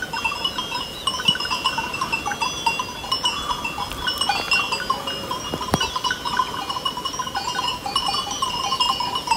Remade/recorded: recorded